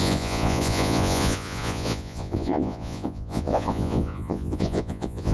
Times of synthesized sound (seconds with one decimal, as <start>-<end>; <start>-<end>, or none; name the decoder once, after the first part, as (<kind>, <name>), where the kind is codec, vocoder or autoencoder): 0.0-5.3 (vocoder, Vocos)